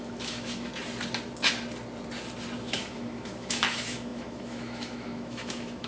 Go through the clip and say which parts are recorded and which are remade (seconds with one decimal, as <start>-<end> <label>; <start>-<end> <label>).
0.0-0.7 remade; 0.7-2.6 recorded; 2.6-5.9 remade